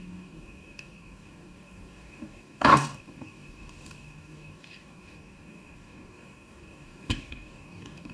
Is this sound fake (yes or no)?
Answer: yes